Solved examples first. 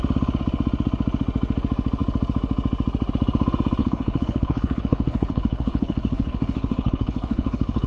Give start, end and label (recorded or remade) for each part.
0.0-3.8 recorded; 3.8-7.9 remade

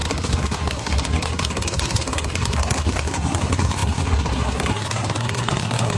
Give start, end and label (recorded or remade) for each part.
0.0-6.0 remade

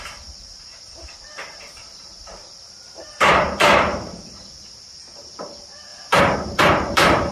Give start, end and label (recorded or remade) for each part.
0.0-7.3 remade

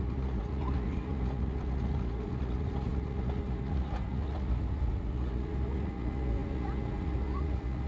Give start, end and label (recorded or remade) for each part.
0.0-7.9 remade

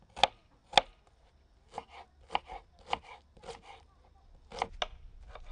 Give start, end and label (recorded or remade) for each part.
0.0-5.5 recorded

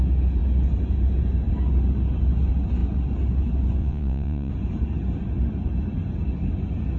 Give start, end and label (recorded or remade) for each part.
0.0-3.8 recorded; 3.8-4.5 remade; 4.5-7.0 recorded

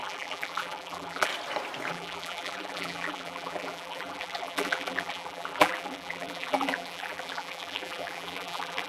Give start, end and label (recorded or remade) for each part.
0.0-1.3 remade; 1.3-1.9 recorded; 1.9-8.9 remade